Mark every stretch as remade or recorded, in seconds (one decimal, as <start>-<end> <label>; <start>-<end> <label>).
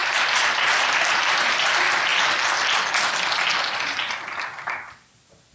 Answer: 0.0-1.7 remade; 1.7-5.5 recorded